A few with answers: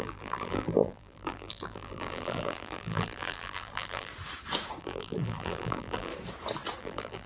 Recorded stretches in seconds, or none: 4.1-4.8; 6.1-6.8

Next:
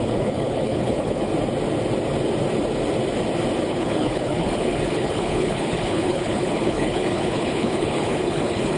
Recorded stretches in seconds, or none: 1.3-3.7

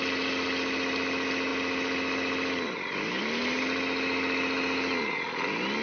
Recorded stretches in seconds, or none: 0.0-5.8

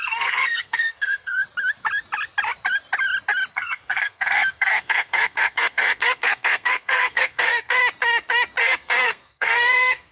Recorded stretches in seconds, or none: 1.4-3.5; 7.8-8.6

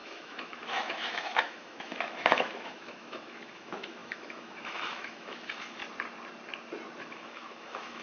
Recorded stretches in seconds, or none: 5.8-7.0

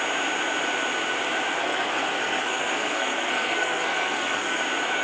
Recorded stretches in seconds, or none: 0.0-1.6; 4.6-5.0